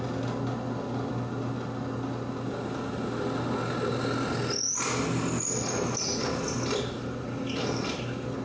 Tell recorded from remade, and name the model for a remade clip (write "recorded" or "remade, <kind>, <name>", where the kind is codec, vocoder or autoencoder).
recorded